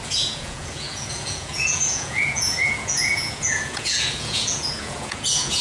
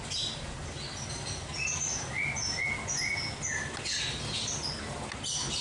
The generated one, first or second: first